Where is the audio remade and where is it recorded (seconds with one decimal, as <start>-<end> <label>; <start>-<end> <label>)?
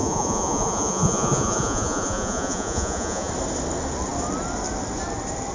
0.0-3.3 remade; 3.3-5.5 recorded